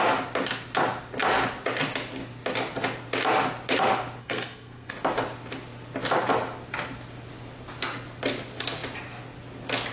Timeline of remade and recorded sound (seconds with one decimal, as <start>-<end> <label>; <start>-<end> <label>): 0.0-4.2 recorded; 4.2-4.9 remade; 4.9-9.9 recorded